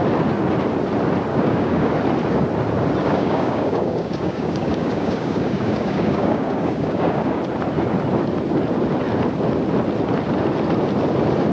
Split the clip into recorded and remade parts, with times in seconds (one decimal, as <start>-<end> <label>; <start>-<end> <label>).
0.0-1.3 recorded; 1.3-1.9 remade; 1.9-3.0 recorded; 3.0-7.4 remade; 7.4-11.5 recorded